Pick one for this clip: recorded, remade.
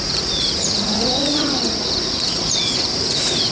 remade